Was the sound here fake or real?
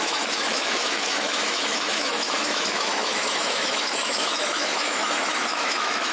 fake